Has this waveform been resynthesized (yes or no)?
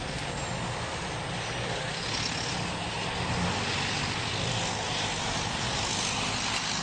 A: no